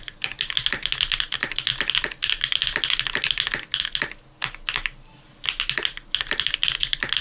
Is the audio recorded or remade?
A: recorded